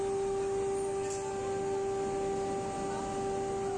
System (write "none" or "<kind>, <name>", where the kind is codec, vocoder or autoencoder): none